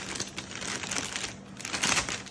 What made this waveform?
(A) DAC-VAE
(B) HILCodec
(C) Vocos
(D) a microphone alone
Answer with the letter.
D